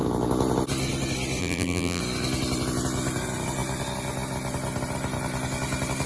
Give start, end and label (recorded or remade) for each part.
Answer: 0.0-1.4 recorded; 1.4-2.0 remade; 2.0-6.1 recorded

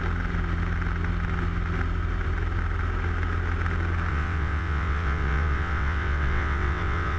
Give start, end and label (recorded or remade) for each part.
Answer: 0.0-4.1 recorded; 4.1-7.2 remade

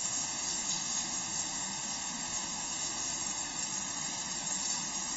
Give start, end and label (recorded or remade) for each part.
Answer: 0.0-3.1 remade; 3.1-5.2 recorded

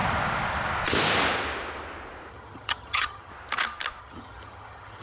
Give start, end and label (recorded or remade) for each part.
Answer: 0.0-2.3 recorded; 2.3-3.3 remade; 3.3-4.0 recorded; 4.0-5.0 remade

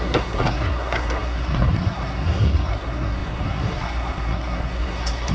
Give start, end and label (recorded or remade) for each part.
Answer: 0.0-5.3 remade

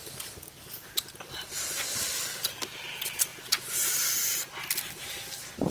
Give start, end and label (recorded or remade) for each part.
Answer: 0.0-5.7 recorded